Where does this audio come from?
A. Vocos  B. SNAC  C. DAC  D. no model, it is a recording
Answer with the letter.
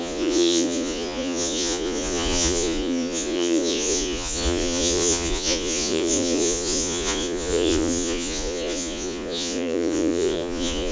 A